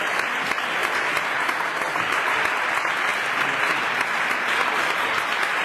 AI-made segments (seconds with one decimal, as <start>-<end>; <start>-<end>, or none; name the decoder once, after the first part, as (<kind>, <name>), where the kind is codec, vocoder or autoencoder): 0.8-2.1 (vocoder, BigVGAN v2)